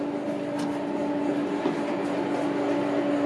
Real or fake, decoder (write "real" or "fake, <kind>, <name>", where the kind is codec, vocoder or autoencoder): real